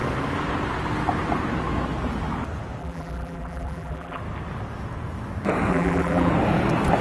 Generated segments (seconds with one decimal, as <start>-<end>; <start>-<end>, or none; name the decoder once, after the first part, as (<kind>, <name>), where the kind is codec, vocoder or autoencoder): 2.8-4.2 (vocoder, BigVGAN v2); 5.7-6.3